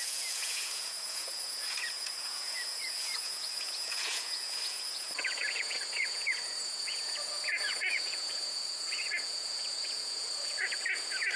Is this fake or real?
fake